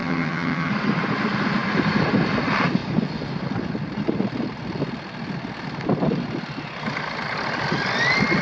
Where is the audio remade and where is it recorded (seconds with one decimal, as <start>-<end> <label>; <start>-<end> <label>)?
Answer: 0.0-0.7 remade; 0.7-8.4 recorded